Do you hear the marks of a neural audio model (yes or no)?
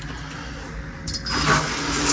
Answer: no